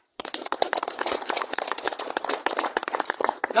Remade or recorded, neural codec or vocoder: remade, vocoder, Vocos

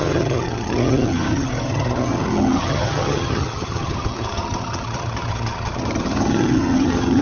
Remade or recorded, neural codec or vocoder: remade, vocoder, HiFi-GAN